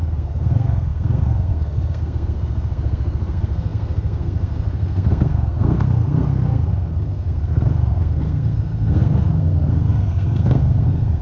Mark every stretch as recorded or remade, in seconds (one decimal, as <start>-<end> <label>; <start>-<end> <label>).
0.0-11.2 remade